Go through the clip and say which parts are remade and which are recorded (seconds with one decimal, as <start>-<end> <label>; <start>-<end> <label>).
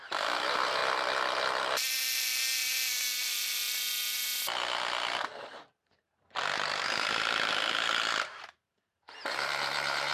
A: 0.0-0.8 remade; 0.8-5.4 recorded; 5.4-10.1 remade